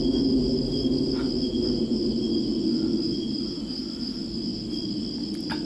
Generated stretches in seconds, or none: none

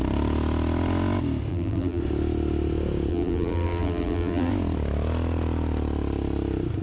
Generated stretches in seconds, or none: 1.5-2.0 (vocoder, BigVGAN v2); 3.1-4.5